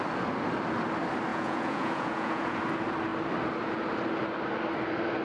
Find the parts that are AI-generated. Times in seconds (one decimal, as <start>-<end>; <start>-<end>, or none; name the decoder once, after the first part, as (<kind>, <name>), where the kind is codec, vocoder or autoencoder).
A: 1.3-2.6 (vocoder, Vocos)